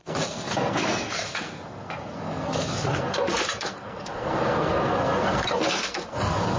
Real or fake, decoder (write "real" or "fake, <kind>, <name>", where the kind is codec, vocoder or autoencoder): fake, codec, SNAC